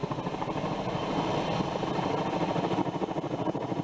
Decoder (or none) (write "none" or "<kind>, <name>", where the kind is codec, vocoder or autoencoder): none